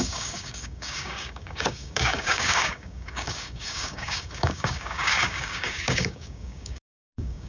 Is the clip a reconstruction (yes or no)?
yes